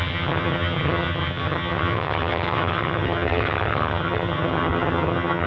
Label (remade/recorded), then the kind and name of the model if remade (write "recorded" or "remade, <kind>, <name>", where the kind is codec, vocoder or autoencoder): remade, vocoder, HiFi-GAN